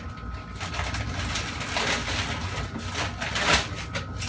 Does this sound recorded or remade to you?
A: recorded